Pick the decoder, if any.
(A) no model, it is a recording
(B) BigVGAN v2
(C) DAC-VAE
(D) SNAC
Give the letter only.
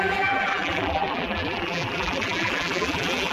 B